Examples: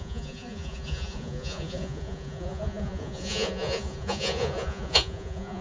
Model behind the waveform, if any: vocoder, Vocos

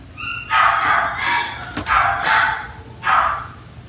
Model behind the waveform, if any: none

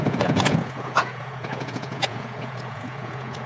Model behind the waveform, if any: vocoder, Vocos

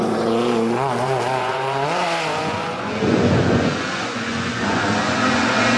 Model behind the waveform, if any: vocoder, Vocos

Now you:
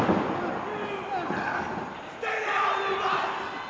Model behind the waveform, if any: none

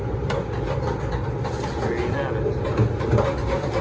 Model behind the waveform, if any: none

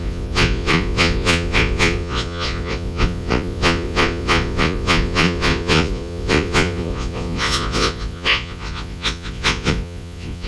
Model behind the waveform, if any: vocoder, Vocos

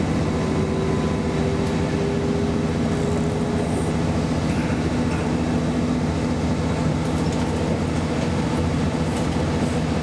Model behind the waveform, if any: none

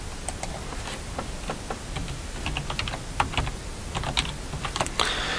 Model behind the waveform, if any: none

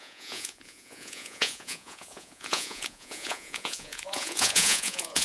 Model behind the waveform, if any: vocoder, Vocos